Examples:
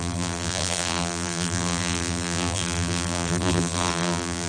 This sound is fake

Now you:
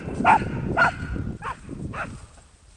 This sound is real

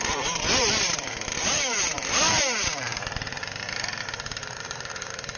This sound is fake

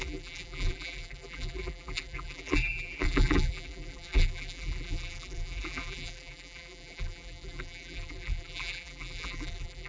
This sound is fake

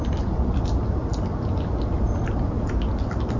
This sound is real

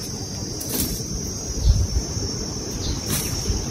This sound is fake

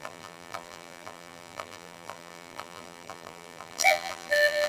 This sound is fake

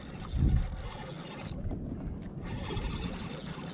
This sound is real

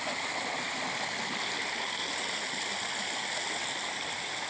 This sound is real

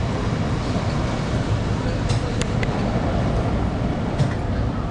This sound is fake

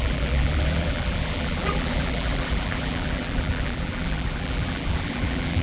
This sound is fake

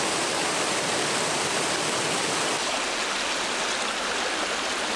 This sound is real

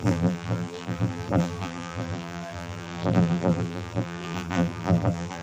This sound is fake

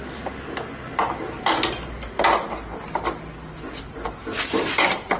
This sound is real